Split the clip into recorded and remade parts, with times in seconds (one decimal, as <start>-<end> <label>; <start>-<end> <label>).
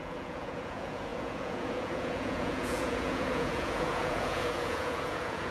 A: 0.0-5.5 remade